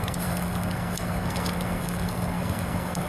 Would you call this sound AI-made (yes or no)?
yes